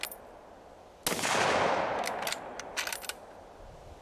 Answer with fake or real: real